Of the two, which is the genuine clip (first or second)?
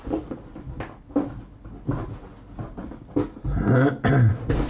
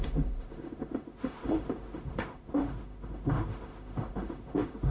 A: first